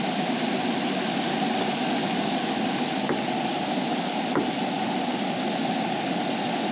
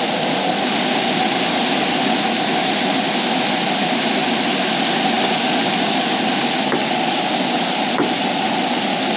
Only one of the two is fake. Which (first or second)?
first